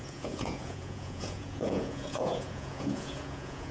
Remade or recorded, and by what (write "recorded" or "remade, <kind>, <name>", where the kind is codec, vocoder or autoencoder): remade, vocoder, Vocos